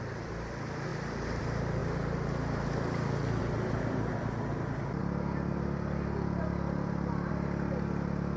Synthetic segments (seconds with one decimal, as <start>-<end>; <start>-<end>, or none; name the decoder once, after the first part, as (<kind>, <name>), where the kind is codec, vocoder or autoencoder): none